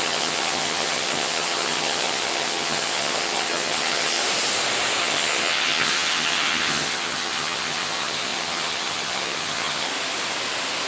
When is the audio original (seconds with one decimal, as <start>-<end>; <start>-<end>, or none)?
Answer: 4.2-5.0; 9.9-10.9